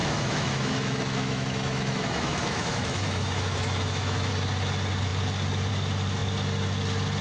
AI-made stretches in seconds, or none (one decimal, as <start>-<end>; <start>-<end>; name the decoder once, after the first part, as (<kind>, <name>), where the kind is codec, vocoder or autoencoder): 0.0-4.3 (autoencoder, DAC-VAE)